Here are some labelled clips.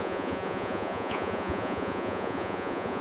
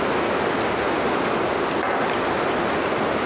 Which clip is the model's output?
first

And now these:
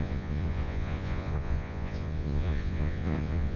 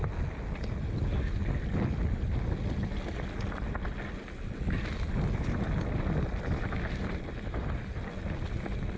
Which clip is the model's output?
first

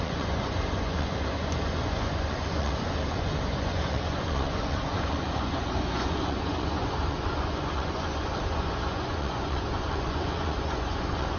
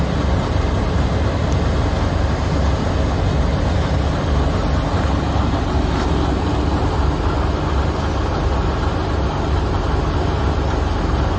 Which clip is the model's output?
first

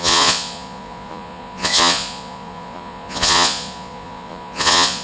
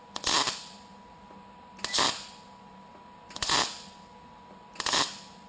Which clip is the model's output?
first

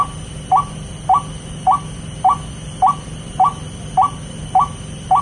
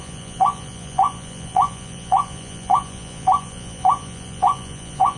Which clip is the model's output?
second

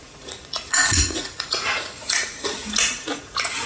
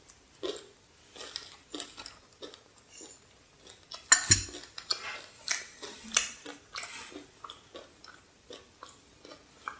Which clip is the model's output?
first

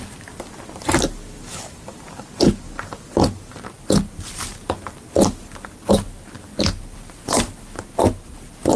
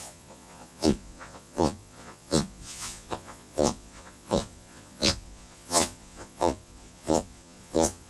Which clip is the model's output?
second